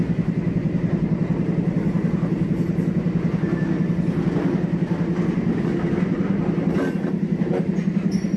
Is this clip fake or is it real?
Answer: real